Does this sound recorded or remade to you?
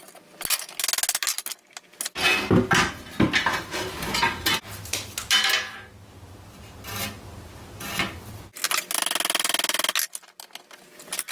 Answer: recorded